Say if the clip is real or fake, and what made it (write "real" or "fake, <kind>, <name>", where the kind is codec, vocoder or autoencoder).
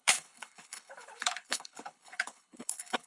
fake, codec, HILCodec